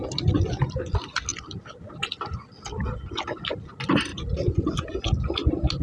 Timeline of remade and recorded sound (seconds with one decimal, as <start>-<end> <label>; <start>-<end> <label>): 0.0-5.8 recorded